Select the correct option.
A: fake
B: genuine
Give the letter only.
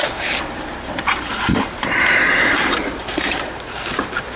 A